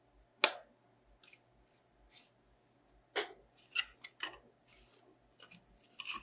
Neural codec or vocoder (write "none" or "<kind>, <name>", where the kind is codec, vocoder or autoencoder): none